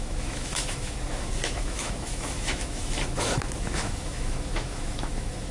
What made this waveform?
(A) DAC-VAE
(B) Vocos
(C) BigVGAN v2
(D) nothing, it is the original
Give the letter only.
A